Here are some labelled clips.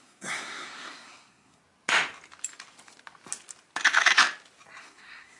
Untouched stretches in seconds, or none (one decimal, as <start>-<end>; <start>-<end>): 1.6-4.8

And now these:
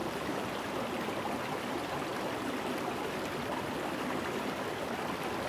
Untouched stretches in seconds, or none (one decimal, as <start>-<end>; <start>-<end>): 0.0-5.5

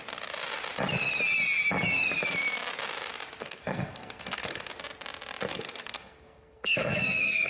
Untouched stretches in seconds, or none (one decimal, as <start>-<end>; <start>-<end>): 0.0-3.4; 4.7-5.5

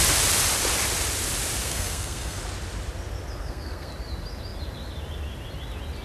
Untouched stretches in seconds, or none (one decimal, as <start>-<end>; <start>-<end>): 0.0-1.6; 2.4-3.4; 3.9-6.0

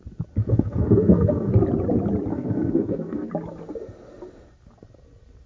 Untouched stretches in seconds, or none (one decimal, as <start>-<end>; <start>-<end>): 0.0-0.4; 1.5-2.3; 3.3-5.5

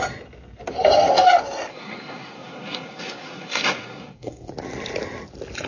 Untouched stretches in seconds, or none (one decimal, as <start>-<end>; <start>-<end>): 0.0-1.7; 4.5-5.7

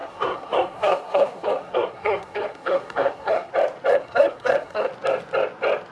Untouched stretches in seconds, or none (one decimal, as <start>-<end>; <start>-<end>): 3.5-3.9; 4.9-5.9